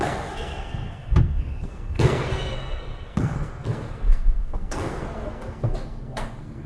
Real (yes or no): no